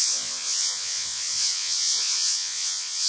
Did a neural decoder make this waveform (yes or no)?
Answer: yes